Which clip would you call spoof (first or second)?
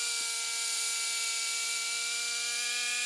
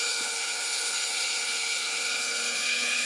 second